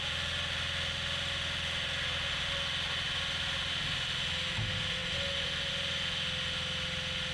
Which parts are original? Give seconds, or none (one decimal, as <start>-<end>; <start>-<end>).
0.0-7.3

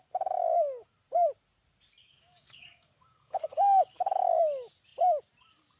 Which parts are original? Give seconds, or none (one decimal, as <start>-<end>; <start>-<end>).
0.0-2.0; 4.0-5.8